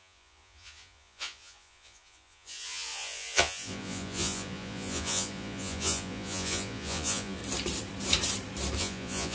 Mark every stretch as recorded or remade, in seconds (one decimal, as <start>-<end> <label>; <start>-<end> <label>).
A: 0.0-7.4 remade; 7.4-8.8 recorded; 8.8-9.3 remade